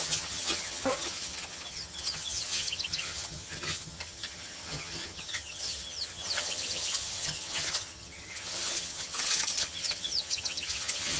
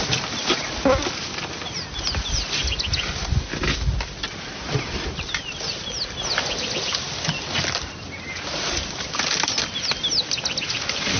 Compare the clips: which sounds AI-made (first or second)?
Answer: first